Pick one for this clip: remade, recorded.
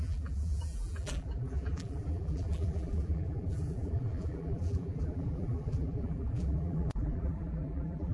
remade